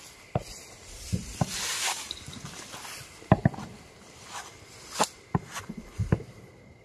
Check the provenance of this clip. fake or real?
real